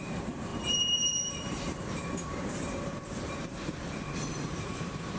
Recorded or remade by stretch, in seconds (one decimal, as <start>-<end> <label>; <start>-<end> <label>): 0.0-5.2 remade